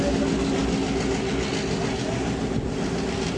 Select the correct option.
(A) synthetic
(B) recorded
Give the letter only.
B